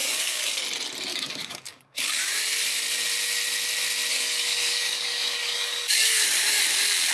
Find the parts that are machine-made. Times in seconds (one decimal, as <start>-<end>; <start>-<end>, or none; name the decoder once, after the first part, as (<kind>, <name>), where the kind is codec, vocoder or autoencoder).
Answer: 0.0-0.6 (codec, DAC); 1.1-2.4; 4.1-6.6

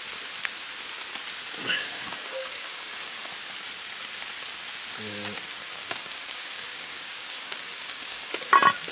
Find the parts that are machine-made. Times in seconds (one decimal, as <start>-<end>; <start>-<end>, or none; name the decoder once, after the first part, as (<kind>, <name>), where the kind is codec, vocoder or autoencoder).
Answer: 1.6-3.2 (codec, DAC); 5.6-8.4

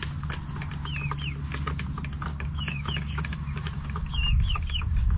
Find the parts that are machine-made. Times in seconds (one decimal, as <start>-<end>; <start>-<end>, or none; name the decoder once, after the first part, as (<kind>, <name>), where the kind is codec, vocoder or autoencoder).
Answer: 2.3-5.2 (codec, DAC)

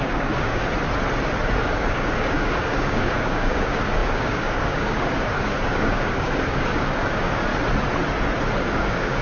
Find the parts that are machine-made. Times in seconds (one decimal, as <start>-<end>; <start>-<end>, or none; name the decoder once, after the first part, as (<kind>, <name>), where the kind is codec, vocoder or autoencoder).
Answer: 0.0-0.6 (codec, DAC); 1.6-7.5; 8.6-9.2

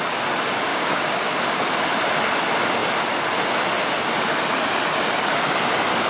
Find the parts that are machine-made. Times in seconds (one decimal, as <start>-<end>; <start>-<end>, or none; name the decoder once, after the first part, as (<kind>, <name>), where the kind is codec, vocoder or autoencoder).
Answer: 0.7-1.3 (codec, DAC)

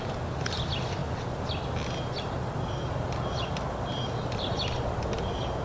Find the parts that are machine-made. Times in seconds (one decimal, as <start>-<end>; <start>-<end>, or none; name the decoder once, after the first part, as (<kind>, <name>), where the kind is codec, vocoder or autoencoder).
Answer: none

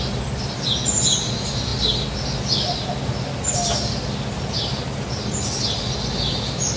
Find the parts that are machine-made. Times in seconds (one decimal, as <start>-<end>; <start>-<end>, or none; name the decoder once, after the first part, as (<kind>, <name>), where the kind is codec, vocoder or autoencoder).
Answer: none

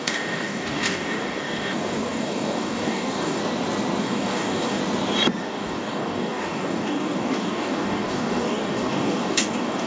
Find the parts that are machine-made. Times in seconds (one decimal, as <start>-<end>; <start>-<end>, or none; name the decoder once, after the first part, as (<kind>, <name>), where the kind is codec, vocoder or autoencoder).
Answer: 0.0-3.4 (codec, DAC); 4.0-4.8; 5.4-9.9